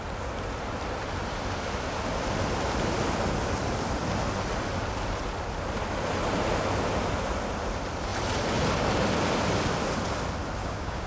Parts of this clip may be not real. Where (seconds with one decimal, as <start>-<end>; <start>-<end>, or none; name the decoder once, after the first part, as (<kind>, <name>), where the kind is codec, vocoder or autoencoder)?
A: 10.6-11.1 (codec, DAC)